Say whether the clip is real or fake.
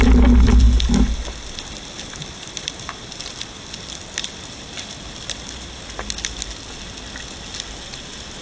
real